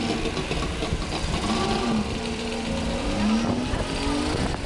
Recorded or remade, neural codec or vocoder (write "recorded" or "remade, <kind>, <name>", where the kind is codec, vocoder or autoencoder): recorded